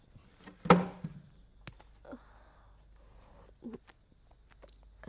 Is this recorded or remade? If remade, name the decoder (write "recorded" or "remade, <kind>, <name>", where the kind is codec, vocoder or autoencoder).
recorded